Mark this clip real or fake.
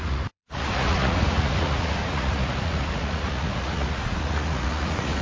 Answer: fake